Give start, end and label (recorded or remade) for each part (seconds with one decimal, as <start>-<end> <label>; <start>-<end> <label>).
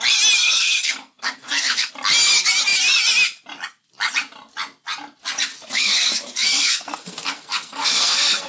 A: 0.0-0.4 recorded; 0.4-1.9 remade; 1.9-5.5 recorded; 5.5-8.5 remade